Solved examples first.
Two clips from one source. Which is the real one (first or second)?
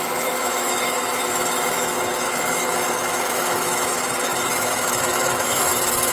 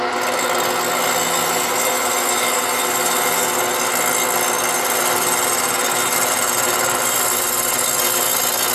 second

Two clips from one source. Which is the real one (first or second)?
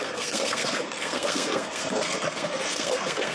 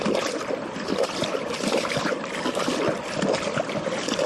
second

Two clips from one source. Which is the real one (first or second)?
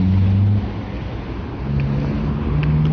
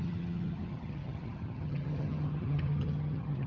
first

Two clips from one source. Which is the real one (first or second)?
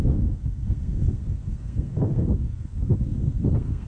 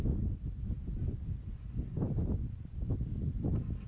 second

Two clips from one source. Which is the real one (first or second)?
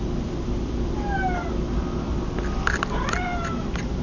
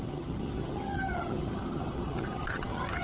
first